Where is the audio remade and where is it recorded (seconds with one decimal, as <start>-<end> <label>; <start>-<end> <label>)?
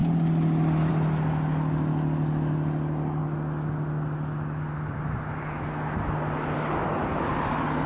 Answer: 0.0-7.9 recorded